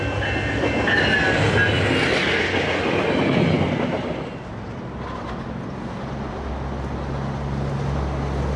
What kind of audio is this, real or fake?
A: real